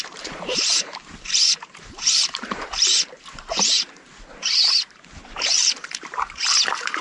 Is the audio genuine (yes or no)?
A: no